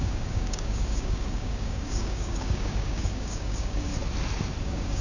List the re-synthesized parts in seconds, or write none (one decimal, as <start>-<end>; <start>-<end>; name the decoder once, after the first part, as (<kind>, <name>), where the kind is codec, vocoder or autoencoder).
0.0-3.9 (codec, DAC); 4.6-5.0